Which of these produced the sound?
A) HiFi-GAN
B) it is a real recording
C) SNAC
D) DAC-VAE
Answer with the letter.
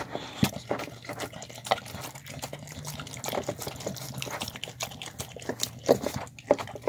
B